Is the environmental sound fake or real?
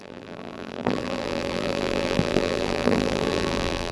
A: fake